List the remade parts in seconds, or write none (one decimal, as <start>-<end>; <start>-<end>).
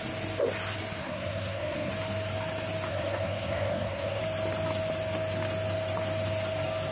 1.0-1.9; 2.9-4.2